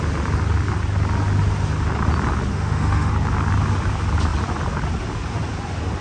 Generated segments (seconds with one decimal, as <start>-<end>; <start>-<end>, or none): 2.5-3.1